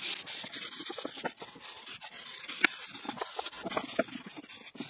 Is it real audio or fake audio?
real